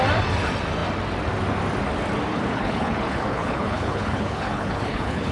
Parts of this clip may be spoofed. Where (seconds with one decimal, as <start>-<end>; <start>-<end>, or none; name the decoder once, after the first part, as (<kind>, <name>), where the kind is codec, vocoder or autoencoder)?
2.3-5.3 (codec, HILCodec)